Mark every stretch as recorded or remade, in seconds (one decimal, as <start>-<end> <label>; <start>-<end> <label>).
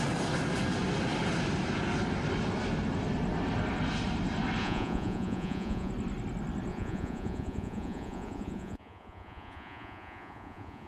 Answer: 0.0-4.6 recorded; 4.6-5.9 remade; 5.9-6.7 recorded; 6.7-10.9 remade